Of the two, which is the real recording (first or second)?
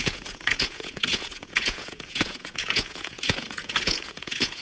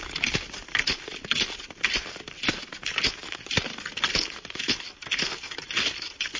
second